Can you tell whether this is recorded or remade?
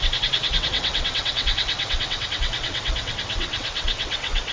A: remade